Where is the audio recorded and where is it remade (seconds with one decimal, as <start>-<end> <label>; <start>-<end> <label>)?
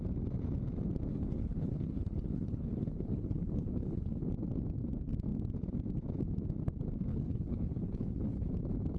0.0-1.1 recorded; 1.1-4.3 remade; 4.3-7.1 recorded; 7.1-8.5 remade; 8.5-9.0 recorded